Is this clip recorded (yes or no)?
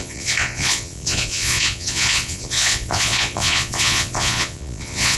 no